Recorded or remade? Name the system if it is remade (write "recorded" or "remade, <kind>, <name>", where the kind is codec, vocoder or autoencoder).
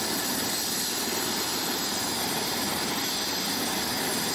recorded